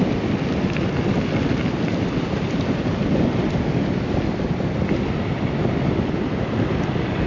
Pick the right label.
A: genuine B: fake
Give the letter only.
A